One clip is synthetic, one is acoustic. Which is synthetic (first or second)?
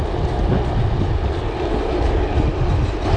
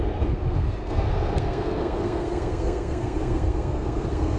second